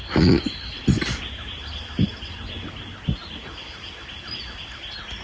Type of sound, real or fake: real